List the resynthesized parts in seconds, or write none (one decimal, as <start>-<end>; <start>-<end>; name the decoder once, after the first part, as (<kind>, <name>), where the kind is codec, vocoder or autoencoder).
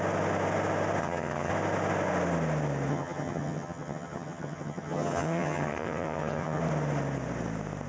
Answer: 1.0-1.5 (vocoder, HiFi-GAN); 2.9-6.6